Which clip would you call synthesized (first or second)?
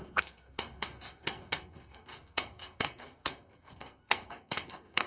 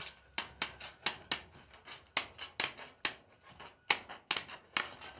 first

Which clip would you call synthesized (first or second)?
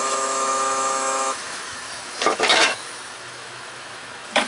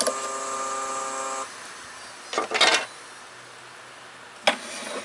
first